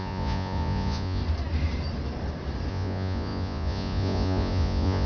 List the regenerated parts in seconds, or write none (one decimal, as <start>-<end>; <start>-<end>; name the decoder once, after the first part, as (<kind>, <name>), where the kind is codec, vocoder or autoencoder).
0.0-1.2 (vocoder, Vocos); 2.7-5.1

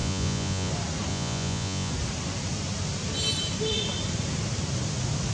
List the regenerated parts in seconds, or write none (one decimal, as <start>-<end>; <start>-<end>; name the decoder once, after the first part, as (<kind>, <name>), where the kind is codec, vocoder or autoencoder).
0.0-0.7 (vocoder, Vocos); 1.1-1.9

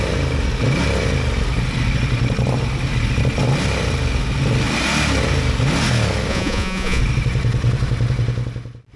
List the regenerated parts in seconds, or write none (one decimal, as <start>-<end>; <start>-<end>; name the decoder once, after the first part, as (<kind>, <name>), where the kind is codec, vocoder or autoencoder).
6.3-7.0 (vocoder, Vocos)

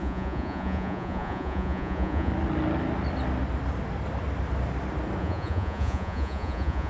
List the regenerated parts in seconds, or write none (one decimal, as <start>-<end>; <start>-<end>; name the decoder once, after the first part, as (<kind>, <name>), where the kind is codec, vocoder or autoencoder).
0.0-2.3 (vocoder, Vocos); 5.2-6.9

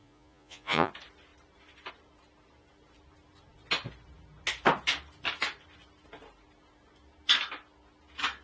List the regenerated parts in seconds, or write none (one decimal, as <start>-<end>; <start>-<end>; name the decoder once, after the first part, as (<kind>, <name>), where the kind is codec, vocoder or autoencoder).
0.0-0.9 (vocoder, Vocos)

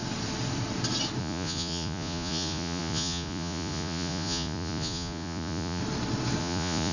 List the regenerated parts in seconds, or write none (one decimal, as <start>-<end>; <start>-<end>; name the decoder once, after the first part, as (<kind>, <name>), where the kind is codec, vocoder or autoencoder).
1.2-5.8 (vocoder, Vocos); 6.4-6.9

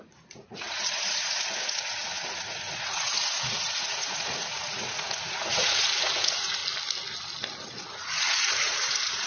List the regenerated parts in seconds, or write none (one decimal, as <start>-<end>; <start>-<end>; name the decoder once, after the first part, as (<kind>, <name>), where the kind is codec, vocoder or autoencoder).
0.0-6.6 (vocoder, Vocos); 7.7-9.3

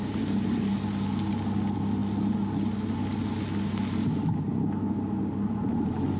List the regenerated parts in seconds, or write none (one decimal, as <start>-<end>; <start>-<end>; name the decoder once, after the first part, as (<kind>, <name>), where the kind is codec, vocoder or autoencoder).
none